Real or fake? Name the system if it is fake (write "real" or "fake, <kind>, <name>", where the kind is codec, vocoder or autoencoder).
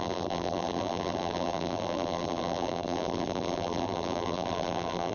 fake, vocoder, BigVGAN v2